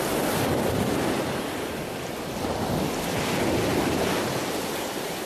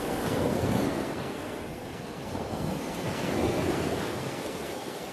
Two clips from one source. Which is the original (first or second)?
first